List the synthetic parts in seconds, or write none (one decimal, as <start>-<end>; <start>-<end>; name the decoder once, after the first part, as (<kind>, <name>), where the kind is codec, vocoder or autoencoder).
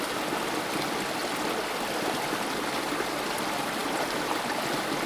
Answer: none